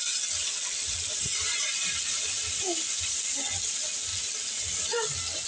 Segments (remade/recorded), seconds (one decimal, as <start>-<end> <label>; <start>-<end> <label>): 0.0-5.5 recorded